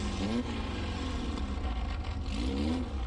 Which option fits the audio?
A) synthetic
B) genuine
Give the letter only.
B